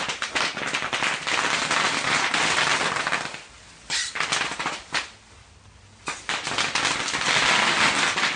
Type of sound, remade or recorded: recorded